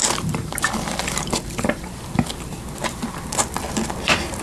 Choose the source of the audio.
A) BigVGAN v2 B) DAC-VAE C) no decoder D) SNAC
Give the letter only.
A